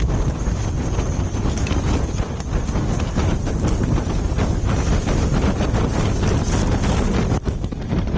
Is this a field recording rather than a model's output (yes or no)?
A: yes